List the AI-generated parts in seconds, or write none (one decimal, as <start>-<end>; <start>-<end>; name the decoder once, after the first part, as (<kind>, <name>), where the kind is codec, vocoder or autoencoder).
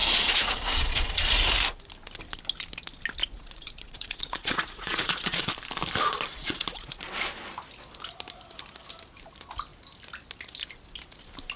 0.0-1.3 (vocoder, Vocos); 3.2-5.5; 6.4-7.0